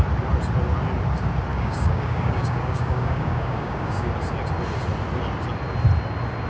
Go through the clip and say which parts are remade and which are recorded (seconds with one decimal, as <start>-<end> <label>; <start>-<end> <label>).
0.0-1.5 recorded; 1.5-4.1 remade; 4.1-6.5 recorded

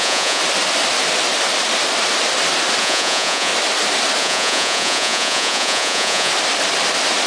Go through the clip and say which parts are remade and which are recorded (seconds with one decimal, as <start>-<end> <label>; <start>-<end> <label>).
0.0-0.4 remade; 0.4-2.8 recorded; 2.8-3.5 remade; 3.5-4.2 recorded; 4.2-6.3 remade; 6.3-7.3 recorded

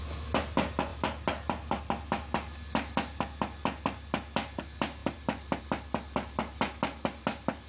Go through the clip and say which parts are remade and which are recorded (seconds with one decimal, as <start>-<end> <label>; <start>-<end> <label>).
0.0-0.9 recorded; 0.9-1.8 remade; 1.8-5.0 recorded; 5.0-5.6 remade; 5.6-7.7 recorded

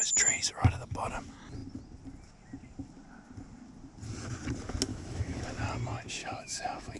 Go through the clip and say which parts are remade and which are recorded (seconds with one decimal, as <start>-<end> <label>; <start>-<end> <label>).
0.0-4.9 recorded; 4.9-5.4 remade; 5.4-6.2 recorded; 6.2-7.0 remade